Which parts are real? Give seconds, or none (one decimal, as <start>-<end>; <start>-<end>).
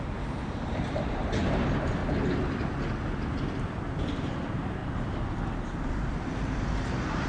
2.0-3.0; 4.8-6.1